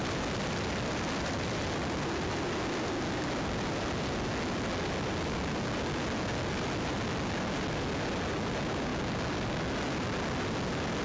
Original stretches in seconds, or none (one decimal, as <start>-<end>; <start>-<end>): 0.0-11.0